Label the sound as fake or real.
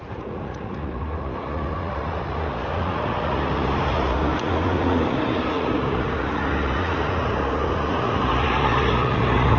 fake